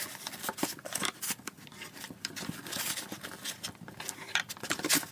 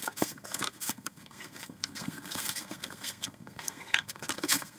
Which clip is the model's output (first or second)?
second